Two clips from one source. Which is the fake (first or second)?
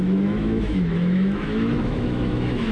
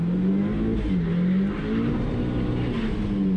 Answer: first